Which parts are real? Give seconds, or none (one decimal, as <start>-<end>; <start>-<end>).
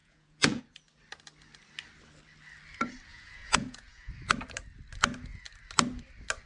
0.6-3.1; 4.1-6.5